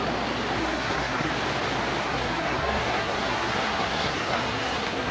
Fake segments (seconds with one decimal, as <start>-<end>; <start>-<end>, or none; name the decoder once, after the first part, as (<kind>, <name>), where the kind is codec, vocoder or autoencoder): 0.6-1.3 (codec, SNAC); 2.0-5.1